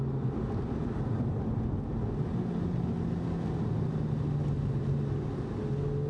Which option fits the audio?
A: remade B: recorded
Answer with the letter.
B